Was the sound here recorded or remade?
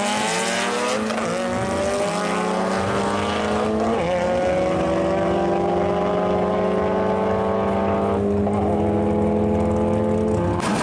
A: recorded